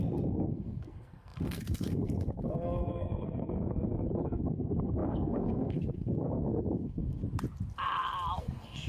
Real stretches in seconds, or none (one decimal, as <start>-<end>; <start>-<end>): 7.2-8.4